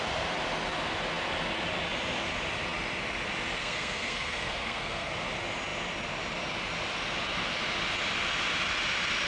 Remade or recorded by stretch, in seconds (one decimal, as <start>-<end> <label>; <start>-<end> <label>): 0.0-3.6 recorded; 3.6-5.1 remade; 5.1-9.3 recorded

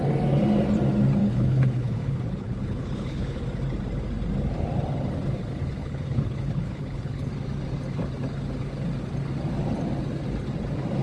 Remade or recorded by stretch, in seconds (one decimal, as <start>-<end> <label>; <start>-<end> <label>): 0.0-1.2 recorded; 1.2-3.4 remade; 3.4-5.8 recorded; 5.8-7.3 remade; 7.3-11.0 recorded

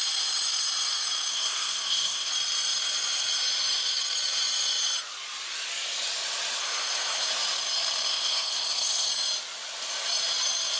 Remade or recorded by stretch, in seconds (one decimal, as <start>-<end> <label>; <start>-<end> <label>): 0.0-1.3 recorded; 1.3-2.3 remade; 2.3-6.6 recorded; 6.6-7.3 remade; 7.3-8.1 recorded; 8.1-9.1 remade; 9.1-10.8 recorded

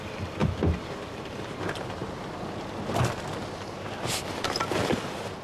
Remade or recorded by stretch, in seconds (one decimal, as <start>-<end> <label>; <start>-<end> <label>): 0.0-2.0 remade; 2.0-4.4 recorded; 4.4-5.4 remade

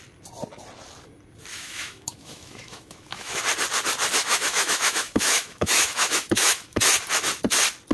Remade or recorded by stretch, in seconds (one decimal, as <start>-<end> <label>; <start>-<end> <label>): 0.0-1.5 recorded; 1.5-3.4 remade; 3.4-4.2 recorded; 4.2-6.8 remade; 6.8-7.9 recorded

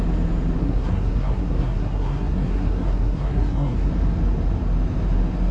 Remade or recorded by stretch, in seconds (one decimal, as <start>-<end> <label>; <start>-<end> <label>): 0.0-0.6 recorded; 0.6-3.9 remade; 3.9-5.5 recorded

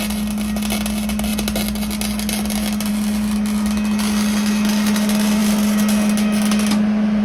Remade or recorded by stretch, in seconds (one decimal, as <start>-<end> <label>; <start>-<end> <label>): 0.0-7.2 recorded

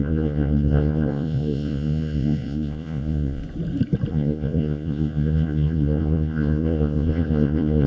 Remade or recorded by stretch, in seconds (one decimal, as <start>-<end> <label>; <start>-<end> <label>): 0.0-3.4 remade; 3.4-4.1 recorded; 4.1-7.9 remade